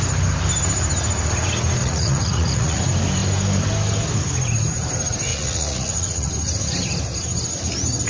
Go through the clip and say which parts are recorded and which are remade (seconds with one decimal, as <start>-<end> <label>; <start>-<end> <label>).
0.0-1.8 recorded; 1.8-2.8 remade; 2.8-5.3 recorded; 5.3-6.3 remade; 6.3-8.1 recorded